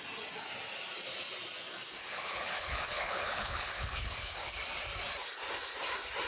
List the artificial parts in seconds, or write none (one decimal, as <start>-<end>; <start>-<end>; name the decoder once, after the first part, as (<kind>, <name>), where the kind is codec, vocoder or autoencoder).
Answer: 2.0-4.5 (codec, HILCodec)